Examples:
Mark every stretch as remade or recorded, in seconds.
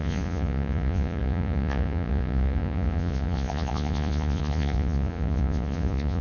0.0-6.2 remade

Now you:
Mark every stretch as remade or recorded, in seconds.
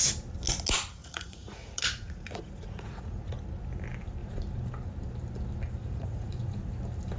0.0-1.0 recorded; 1.0-3.4 remade; 3.4-4.2 recorded; 4.2-4.7 remade; 4.7-5.8 recorded; 5.8-6.7 remade; 6.7-7.2 recorded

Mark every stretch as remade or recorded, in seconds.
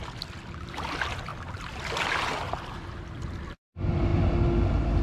0.0-5.0 recorded